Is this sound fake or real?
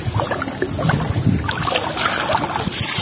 real